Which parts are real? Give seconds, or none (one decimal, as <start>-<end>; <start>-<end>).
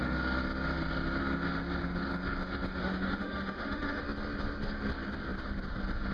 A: 0.0-2.8; 4.0-6.1